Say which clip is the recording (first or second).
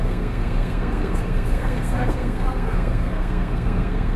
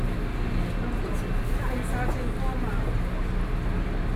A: second